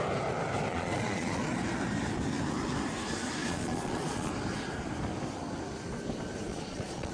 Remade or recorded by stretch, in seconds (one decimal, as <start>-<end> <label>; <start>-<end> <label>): 0.0-0.7 recorded; 0.7-1.5 remade; 1.5-3.4 recorded; 3.4-4.3 remade; 4.3-6.5 recorded; 6.5-7.1 remade

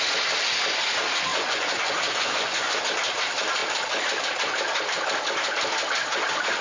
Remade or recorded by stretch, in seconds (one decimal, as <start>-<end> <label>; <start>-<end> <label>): 0.0-1.3 recorded; 1.3-2.8 remade; 2.8-6.6 recorded

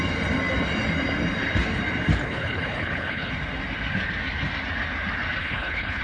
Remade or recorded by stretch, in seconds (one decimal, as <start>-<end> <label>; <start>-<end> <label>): 0.0-2.2 recorded; 2.2-3.3 remade; 3.3-5.4 recorded; 5.4-6.0 remade

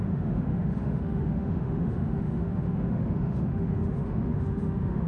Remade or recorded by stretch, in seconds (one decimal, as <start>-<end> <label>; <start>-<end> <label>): 0.0-5.1 remade